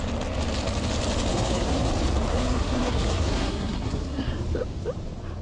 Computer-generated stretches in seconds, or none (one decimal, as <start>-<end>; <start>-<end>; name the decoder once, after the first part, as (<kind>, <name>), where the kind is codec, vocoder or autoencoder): 1.3-1.9 (codec, SNAC); 2.3-4.3